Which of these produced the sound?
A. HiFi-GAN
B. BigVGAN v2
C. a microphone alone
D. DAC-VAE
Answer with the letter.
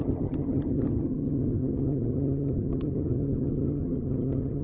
A